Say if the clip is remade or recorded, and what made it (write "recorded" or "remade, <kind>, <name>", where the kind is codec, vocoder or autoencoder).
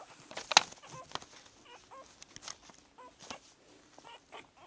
recorded